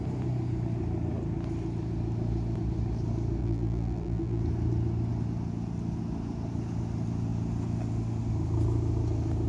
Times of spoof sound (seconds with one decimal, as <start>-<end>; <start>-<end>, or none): 3.4-4.4